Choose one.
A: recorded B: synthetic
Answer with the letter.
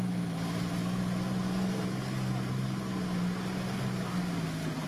A